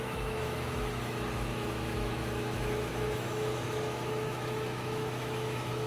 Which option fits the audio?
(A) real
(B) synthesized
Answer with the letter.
B